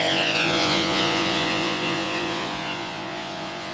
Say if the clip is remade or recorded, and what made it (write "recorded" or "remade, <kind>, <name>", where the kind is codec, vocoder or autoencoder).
remade, vocoder, Vocos